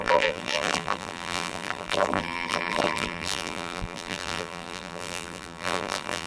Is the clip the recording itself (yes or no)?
no